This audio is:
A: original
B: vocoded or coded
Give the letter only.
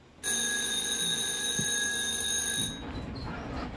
A